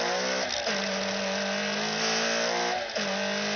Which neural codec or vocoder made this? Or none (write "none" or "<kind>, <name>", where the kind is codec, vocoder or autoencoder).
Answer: none